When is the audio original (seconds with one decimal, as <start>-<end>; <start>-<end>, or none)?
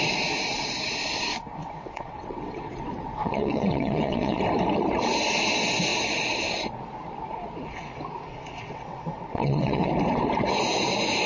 0.0-1.6; 4.4-8.3; 9.9-11.3